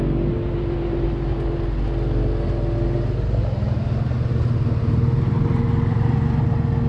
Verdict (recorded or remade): recorded